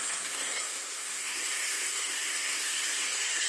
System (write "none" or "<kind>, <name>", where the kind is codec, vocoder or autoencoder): codec, SNAC